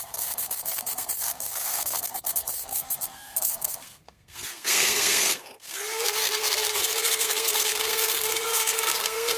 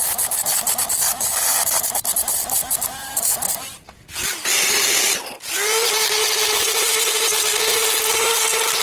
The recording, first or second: second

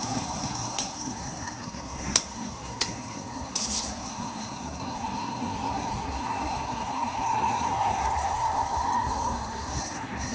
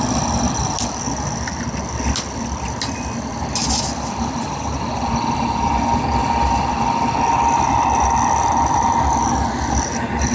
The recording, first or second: second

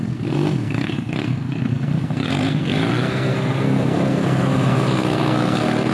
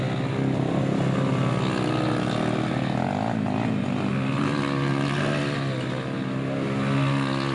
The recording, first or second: second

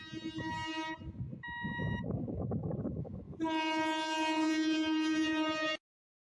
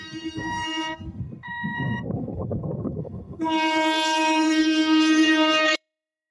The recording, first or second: first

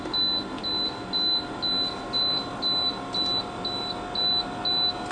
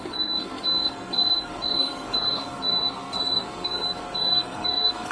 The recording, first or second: first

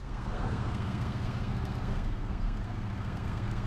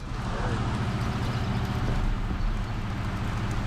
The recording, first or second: second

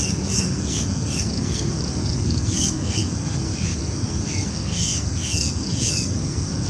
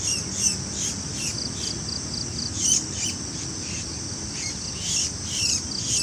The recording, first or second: second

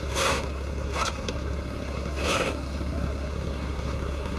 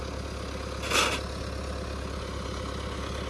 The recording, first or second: second